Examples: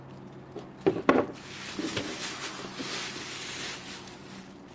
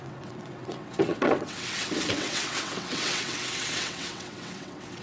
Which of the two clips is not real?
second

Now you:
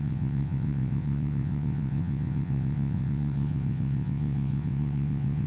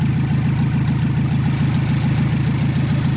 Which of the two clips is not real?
first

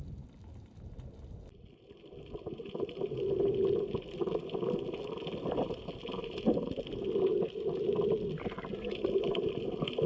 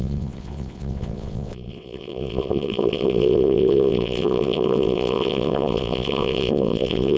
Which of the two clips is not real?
second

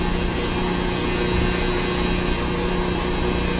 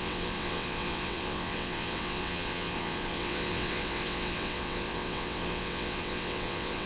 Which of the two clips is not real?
second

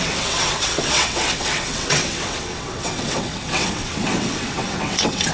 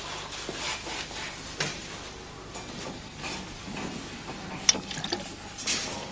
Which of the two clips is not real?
first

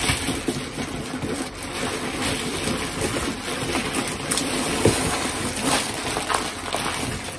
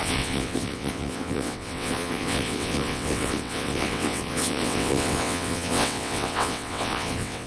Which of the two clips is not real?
second